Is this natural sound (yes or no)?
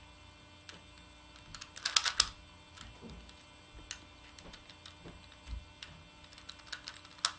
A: yes